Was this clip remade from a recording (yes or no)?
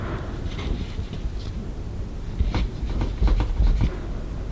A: no